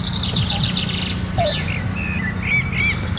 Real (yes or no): yes